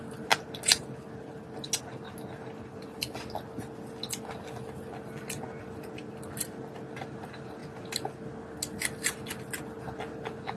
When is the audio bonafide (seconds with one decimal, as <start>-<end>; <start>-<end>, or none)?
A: 0.0-10.6